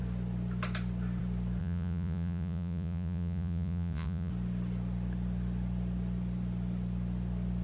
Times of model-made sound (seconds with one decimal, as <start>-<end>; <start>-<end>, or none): 1.6-4.3

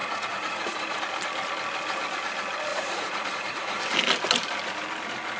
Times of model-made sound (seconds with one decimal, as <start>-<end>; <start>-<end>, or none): 0.0-1.0; 2.7-3.8

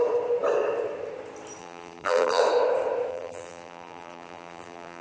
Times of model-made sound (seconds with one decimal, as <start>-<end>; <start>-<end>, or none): 1.6-2.4; 3.1-5.0